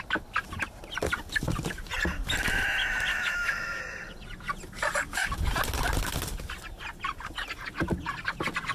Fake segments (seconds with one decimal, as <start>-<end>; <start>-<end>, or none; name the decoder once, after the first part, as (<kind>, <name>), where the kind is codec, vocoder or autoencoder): 3.1-3.8 (autoencoder, DAC-VAE)